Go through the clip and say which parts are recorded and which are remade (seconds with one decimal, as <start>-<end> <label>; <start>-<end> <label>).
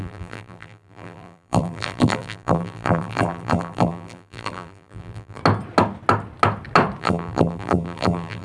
0.0-5.4 remade; 5.4-7.0 recorded; 7.0-8.4 remade